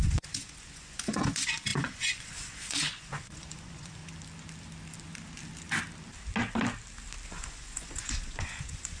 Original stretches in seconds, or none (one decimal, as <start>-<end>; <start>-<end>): 4.0-7.3